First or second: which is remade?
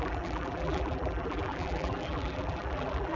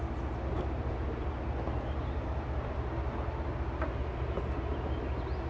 first